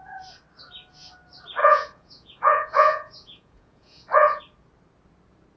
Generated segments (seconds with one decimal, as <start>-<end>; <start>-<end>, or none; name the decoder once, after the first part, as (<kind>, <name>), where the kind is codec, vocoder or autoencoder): 1.6-4.4 (vocoder, Vocos)

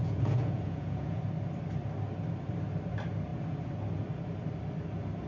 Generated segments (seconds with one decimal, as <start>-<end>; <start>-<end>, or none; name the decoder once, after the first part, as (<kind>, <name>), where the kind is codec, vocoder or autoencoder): 0.0-1.2 (vocoder, Vocos)

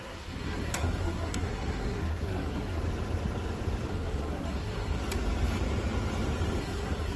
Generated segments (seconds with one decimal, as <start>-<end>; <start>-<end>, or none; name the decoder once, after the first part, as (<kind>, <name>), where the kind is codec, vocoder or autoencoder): 0.0-2.8 (codec, SNAC); 3.9-5.0; 6.6-7.2

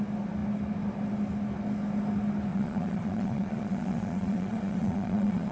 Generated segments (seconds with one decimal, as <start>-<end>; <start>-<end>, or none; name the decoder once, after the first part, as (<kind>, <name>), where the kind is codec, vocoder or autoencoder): 2.5-5.5 (vocoder, Vocos)

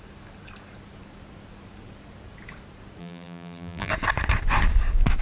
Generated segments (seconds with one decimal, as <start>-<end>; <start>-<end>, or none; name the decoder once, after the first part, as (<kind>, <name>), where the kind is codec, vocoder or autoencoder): 3.0-3.9 (vocoder, BigVGAN v2)

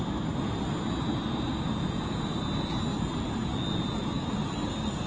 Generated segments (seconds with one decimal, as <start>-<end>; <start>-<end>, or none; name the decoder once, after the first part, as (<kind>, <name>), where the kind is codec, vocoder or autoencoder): 1.5-2.4 (vocoder, Vocos)

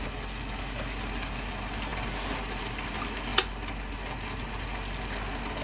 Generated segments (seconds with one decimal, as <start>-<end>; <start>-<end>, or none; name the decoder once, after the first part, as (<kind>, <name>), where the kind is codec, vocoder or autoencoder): none

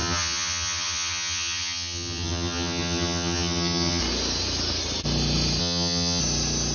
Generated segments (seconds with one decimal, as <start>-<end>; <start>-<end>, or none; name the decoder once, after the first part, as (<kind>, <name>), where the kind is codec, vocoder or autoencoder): 0.0-4.0 (vocoder, HiFi-GAN); 5.6-6.2